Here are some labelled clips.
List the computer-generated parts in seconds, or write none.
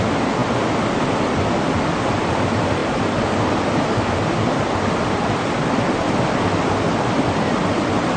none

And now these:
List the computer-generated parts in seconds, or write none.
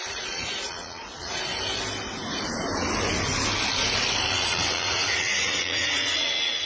0.0-1.5 (vocoder, Vocos); 4.3-6.7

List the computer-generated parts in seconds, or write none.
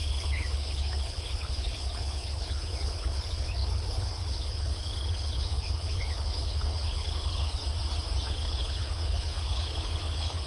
0.0-7.6 (codec, HILCodec); 8.3-10.5